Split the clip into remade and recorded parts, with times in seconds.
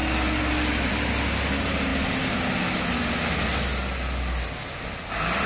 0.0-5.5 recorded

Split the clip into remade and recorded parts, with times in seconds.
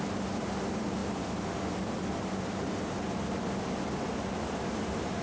0.0-5.2 recorded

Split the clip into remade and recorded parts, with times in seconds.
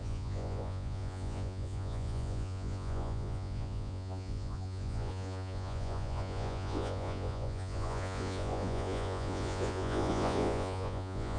0.0-11.4 remade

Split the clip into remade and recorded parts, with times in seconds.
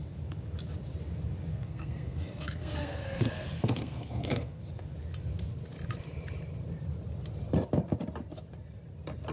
0.0-1.5 recorded; 1.5-4.6 remade; 4.6-9.3 recorded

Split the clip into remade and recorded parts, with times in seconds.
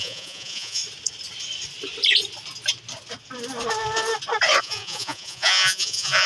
0.0-0.8 remade; 0.8-4.6 recorded; 4.6-6.3 remade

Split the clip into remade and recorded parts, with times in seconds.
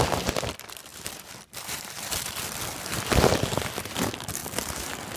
0.0-4.4 remade; 4.4-5.2 recorded